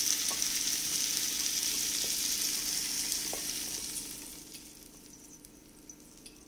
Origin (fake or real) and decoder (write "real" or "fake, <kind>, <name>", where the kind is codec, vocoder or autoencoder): real